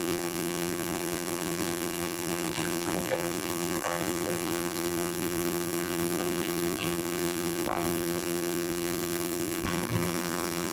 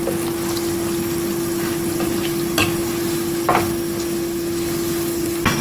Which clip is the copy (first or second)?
first